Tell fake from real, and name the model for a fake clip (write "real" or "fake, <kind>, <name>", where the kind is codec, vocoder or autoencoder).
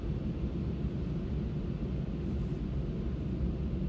real